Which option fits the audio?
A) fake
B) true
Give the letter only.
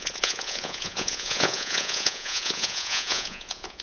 A